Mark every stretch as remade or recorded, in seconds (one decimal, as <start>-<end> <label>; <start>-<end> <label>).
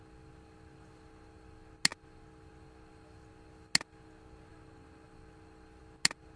0.0-6.4 recorded